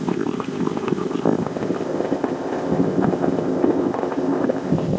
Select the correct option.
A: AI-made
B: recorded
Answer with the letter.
A